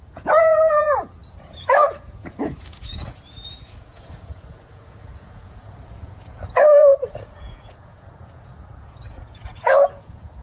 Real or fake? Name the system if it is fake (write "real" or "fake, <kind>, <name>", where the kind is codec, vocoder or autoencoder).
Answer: fake, vocoder, Vocos